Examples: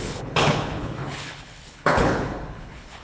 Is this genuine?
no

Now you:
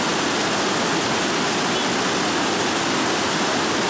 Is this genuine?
yes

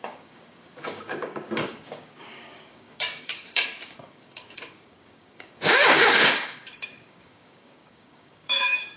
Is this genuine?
no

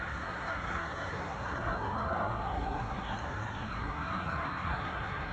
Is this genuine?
no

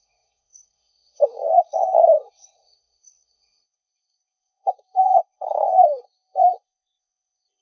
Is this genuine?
no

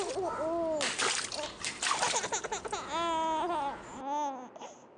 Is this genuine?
yes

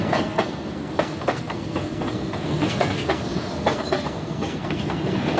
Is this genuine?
no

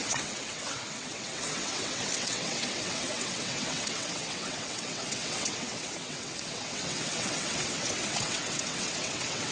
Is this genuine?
no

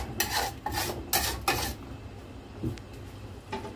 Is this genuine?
yes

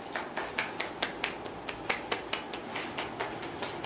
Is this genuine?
yes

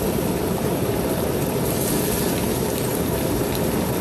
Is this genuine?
no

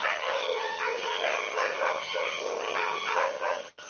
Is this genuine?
no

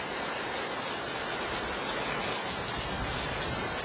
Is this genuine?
yes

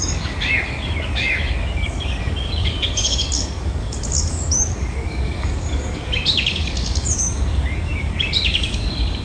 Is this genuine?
no